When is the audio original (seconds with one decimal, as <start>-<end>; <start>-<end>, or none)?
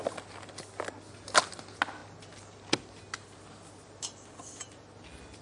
0.0-5.4